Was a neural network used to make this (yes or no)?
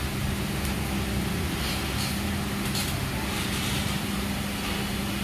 no